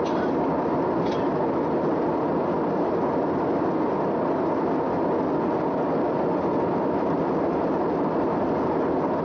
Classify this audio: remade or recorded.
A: recorded